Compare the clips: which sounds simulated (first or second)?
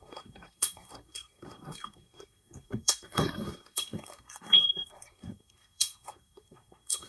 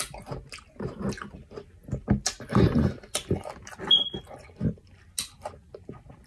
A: first